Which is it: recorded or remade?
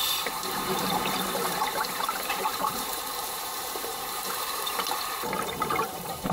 remade